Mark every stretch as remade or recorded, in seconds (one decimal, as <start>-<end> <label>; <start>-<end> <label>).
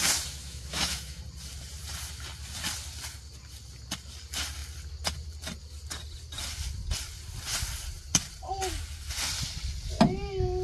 0.0-0.4 recorded; 0.4-1.2 remade; 1.2-10.6 recorded